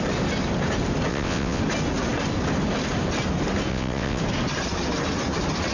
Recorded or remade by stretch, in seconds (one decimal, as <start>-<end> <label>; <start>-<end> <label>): 0.0-1.1 recorded; 1.1-1.6 remade; 1.6-3.7 recorded; 3.7-4.2 remade; 4.2-5.7 recorded